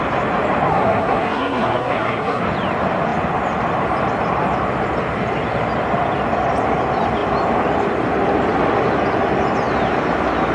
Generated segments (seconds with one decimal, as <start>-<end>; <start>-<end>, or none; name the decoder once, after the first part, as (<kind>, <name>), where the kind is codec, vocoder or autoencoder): 0.7-2.4 (codec, SNAC)